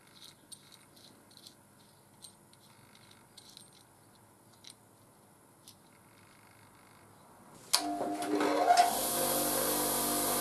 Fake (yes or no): no